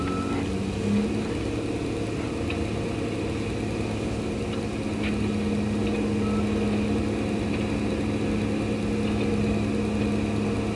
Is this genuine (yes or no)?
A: yes